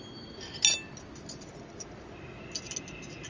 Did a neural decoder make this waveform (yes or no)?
no